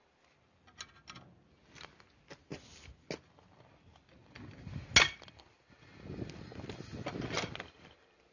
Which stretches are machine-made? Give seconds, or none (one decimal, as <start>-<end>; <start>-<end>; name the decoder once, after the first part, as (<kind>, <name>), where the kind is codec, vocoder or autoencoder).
none